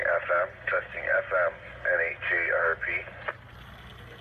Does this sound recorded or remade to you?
recorded